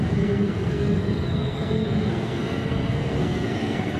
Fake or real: fake